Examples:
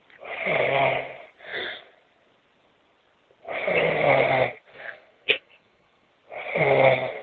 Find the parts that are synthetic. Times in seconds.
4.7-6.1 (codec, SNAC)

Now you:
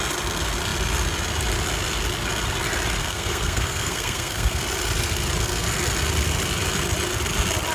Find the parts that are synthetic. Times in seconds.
3.0-4.6 (codec, SNAC)

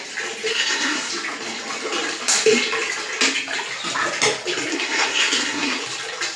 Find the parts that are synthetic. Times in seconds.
0.5-1.1 (codec, SNAC); 4.7-5.8

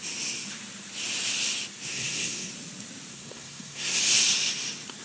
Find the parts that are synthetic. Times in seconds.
1.9-2.5 (codec, SNAC); 3.1-4.0

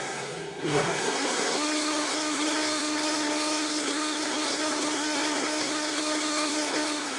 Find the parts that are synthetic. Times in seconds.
0.0-7.2 (codec, SNAC)

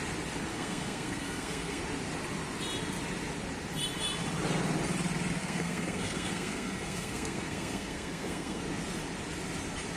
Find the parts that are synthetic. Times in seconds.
0.5-1.8 (codec, SNAC); 5.4-8.6

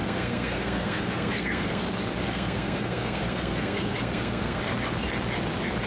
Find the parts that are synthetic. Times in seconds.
0.0-1.8 (codec, SNAC); 2.2-4.6

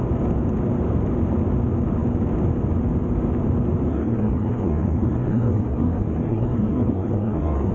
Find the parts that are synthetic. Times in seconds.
3.9-7.7 (codec, SNAC)